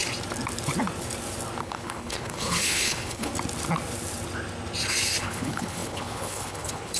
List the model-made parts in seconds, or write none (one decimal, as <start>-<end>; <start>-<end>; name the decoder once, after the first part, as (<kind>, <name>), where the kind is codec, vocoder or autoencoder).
1.6-3.3 (codec, HILCodec); 5.2-7.0